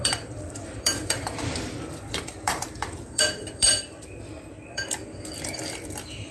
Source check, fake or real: fake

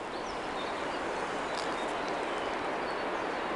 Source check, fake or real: real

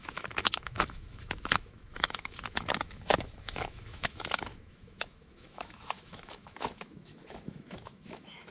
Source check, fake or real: fake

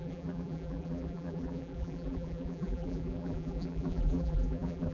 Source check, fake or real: fake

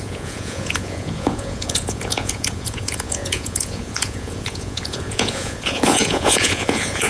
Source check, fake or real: fake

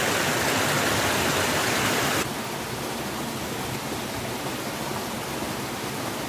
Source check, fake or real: real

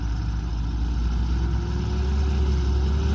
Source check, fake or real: real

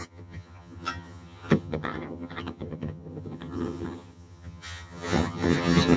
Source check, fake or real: fake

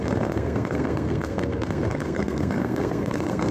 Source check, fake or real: fake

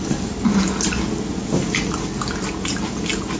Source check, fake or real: real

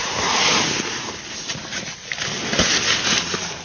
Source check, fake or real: real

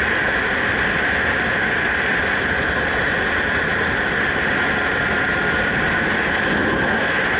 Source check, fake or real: real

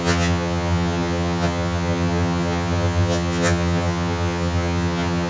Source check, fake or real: fake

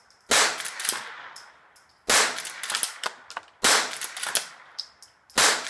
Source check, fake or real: real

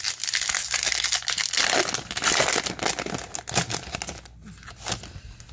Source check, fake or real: real